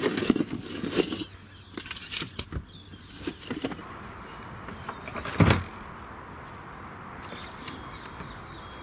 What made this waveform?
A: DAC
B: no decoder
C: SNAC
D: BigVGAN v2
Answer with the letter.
B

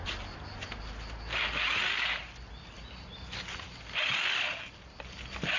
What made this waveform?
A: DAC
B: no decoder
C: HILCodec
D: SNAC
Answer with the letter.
B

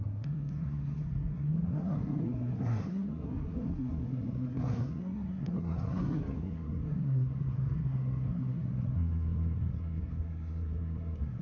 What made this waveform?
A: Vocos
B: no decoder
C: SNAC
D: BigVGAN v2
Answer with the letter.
C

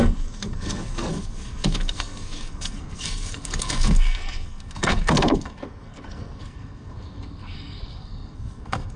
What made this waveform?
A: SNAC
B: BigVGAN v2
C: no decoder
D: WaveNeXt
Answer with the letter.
A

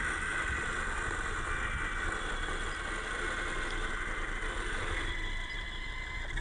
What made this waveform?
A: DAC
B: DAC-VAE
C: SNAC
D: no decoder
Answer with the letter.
D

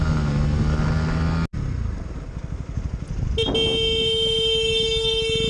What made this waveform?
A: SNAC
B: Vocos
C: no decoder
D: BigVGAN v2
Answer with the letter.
C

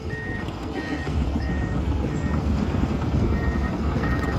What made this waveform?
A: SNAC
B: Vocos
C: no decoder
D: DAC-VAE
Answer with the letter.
A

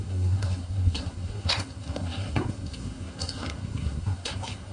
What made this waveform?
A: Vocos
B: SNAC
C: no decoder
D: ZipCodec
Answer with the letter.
B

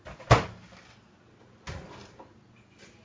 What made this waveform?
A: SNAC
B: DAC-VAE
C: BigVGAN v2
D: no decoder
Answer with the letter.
D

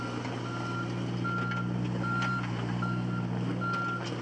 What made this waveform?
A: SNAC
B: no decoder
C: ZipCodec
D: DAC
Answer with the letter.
B